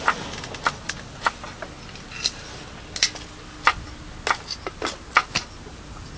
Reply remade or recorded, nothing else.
recorded